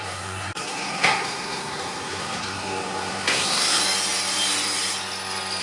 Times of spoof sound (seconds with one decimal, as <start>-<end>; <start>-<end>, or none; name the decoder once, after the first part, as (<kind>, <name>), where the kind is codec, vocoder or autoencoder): 0.0-3.8 (codec, SNAC)